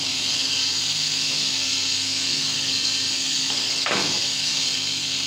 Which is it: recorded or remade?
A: remade